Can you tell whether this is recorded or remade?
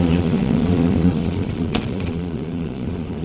remade